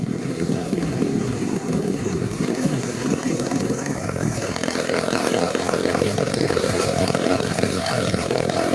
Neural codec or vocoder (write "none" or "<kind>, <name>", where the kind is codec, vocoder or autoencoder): codec, SNAC